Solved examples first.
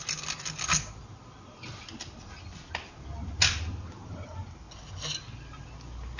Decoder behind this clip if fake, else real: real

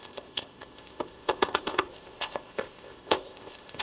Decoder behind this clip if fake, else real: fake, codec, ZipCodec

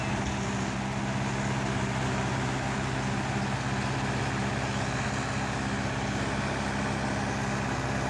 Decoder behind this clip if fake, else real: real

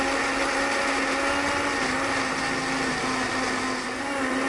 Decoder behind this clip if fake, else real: real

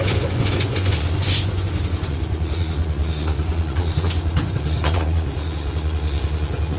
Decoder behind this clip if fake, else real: fake, vocoder, Vocos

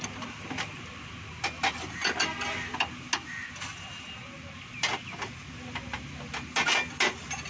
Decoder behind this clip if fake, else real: real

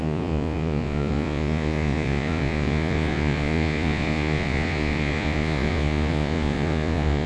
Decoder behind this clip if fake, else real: fake, vocoder, Vocos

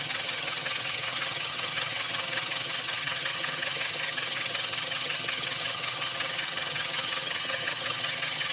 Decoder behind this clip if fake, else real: fake, vocoder, HiFi-GAN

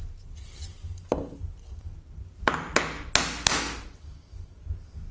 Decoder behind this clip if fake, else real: real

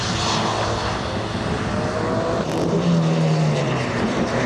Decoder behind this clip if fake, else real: real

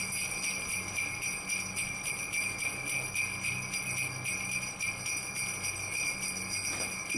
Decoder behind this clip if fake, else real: real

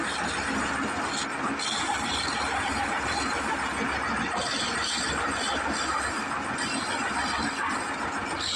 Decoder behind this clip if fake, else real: real